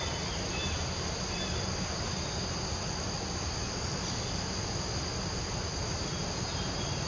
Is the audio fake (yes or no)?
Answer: no